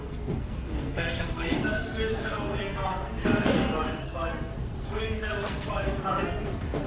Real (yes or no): no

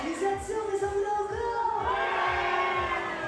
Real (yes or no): yes